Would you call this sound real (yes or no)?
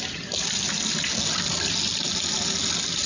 yes